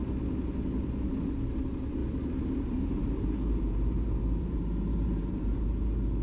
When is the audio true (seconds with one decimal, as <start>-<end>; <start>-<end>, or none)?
0.0-2.0; 5.7-6.2